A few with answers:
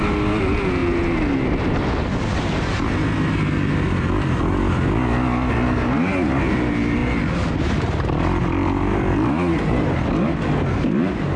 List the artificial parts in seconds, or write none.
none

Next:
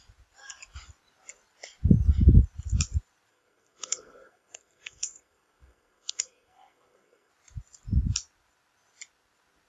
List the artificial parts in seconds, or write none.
3.3-7.3 (codec, SNAC)

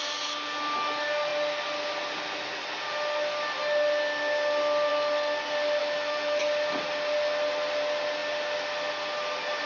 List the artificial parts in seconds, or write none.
5.8-6.4 (autoencoder, DAC-VAE)

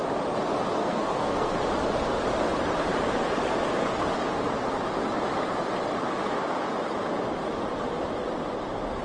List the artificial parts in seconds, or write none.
0.8-1.6 (codec, SNAC)

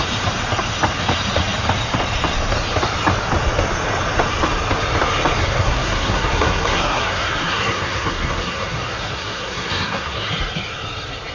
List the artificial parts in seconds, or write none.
5.4-10.3 (codec, SNAC)

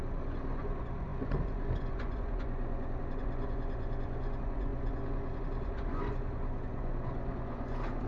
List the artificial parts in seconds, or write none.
0.0-8.1 (vocoder, Vocos)

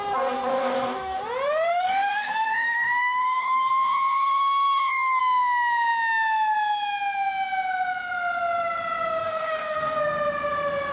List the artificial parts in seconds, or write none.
0.5-1.2 (codec, DAC); 1.7-5.2; 9.2-10.0

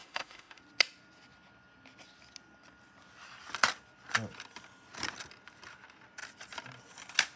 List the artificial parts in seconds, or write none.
0.0-0.6 (autoencoder, DAC-VAE)